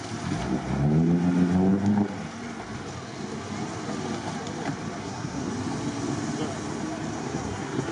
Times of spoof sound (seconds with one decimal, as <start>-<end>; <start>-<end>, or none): 5.0-5.5; 7.2-7.9